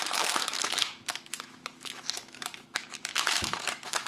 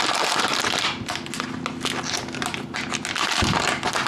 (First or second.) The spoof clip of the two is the first